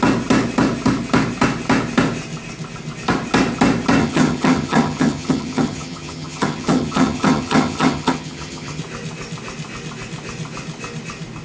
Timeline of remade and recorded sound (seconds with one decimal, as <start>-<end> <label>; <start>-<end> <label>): 0.0-4.0 recorded; 4.0-8.8 remade; 8.8-11.4 recorded